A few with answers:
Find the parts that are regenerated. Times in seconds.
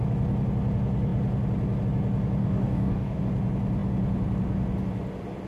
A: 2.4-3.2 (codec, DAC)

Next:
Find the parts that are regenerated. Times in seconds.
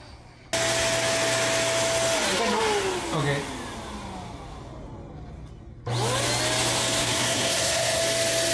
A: 7.0-8.0 (codec, SNAC)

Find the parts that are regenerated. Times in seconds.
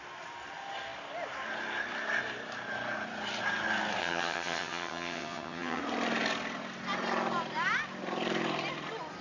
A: 4.0-5.8 (vocoder, HiFi-GAN)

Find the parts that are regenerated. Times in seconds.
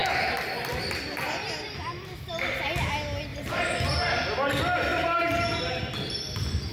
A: 3.3-3.9 (vocoder, BigVGAN v2); 4.9-5.8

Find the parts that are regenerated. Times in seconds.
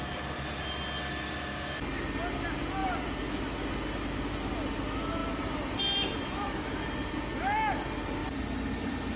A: 2.8-3.3 (vocoder, BigVGAN v2); 5.2-7.1; 8.2-9.2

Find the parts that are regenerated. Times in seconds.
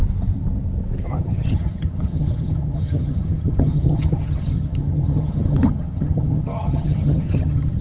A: 1.1-7.8 (vocoder, HiFi-GAN)